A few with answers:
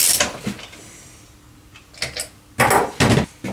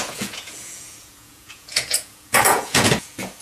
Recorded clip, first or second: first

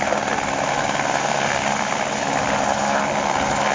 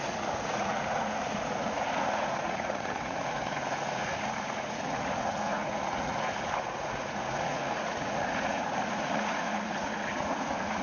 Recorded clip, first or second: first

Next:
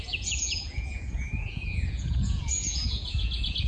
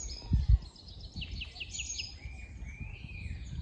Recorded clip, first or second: second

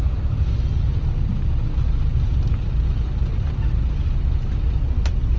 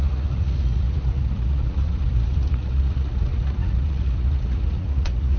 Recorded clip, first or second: first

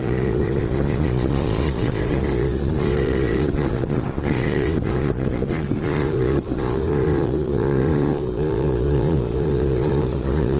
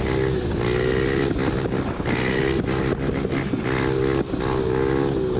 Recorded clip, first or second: second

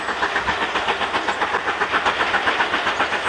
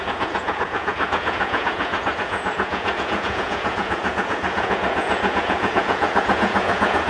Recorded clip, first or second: first